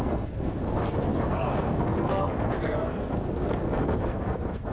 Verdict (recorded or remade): remade